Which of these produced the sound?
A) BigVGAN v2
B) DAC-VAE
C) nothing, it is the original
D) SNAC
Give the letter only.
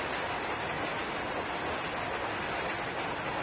C